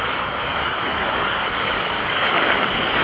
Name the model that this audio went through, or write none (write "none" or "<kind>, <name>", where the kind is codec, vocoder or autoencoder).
codec, DAC